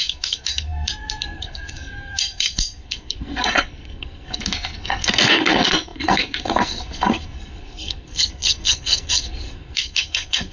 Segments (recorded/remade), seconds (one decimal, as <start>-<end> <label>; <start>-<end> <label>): 0.0-10.5 remade